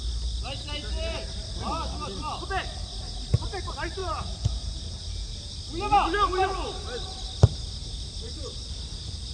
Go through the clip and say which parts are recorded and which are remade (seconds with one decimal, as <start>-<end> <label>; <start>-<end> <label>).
0.0-4.0 recorded; 4.0-5.5 remade; 5.5-9.3 recorded